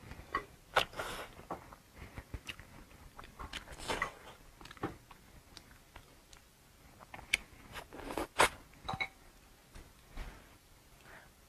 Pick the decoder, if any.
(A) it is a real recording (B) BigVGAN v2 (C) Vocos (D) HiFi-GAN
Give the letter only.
A